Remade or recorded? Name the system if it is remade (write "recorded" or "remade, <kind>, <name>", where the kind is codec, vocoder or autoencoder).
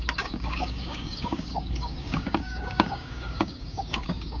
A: remade, codec, DAC